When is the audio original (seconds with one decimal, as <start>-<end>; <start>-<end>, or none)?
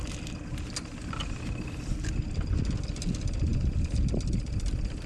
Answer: 0.0-5.1